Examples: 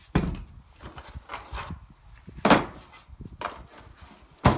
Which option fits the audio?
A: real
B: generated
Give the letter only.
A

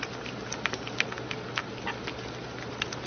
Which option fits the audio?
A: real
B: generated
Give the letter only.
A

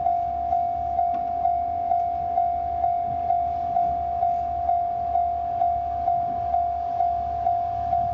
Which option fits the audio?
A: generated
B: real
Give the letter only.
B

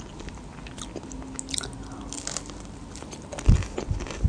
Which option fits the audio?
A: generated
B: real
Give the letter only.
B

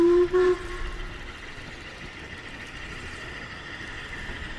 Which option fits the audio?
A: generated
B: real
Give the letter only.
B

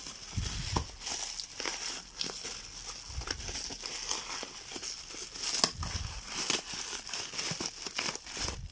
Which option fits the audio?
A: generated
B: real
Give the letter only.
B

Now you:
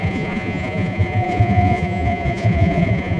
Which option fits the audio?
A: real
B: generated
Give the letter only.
B